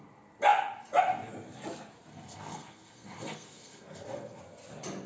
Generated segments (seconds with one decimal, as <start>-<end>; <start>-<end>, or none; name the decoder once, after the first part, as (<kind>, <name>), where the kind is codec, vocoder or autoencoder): 2.1-4.4 (codec, SNAC)